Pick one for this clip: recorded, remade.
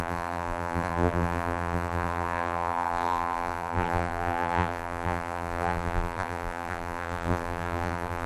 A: remade